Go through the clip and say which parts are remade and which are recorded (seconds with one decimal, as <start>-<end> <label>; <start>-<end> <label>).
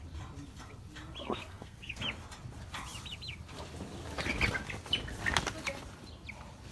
0.0-1.2 recorded; 1.2-2.0 remade; 2.0-6.7 recorded